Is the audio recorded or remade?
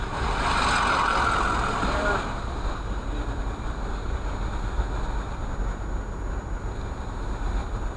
recorded